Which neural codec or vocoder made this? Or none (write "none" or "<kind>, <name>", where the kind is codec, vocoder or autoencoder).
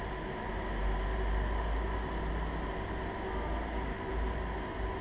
none